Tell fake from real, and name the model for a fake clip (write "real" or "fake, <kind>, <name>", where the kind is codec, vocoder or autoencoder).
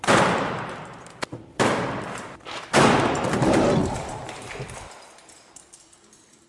fake, vocoder, BigVGAN v2